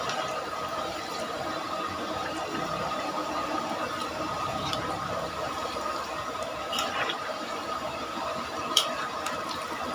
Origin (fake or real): fake